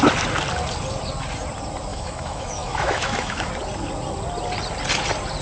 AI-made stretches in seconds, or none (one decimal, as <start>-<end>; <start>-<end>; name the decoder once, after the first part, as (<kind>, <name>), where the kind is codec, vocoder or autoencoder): 1.9-3.5 (autoencoder, DAC-VAE)